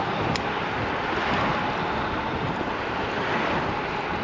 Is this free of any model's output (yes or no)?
yes